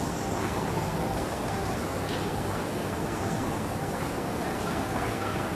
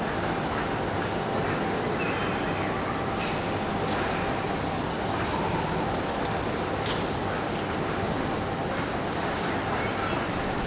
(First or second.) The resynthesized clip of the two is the first